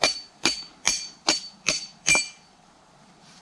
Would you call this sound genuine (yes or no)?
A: no